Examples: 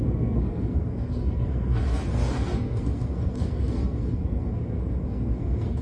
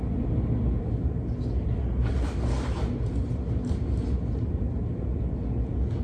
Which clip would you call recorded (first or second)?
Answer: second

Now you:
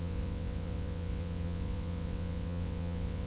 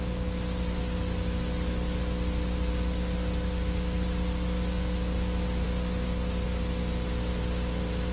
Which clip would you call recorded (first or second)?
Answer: second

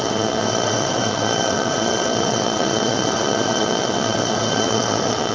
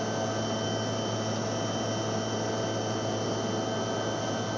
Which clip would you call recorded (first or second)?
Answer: second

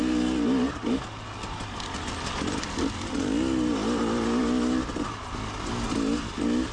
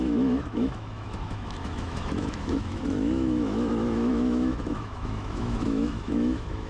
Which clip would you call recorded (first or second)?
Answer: first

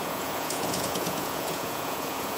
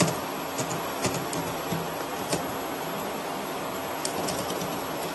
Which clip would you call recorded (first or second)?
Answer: second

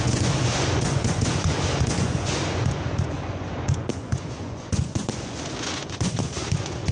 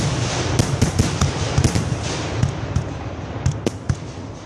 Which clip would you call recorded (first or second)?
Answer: second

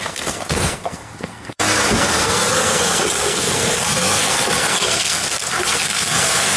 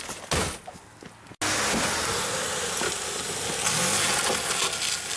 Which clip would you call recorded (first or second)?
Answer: second